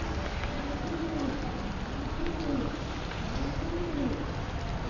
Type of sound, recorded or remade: recorded